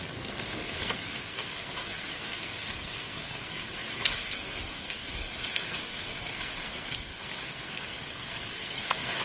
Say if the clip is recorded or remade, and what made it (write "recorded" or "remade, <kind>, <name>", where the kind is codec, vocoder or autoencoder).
remade, codec, SNAC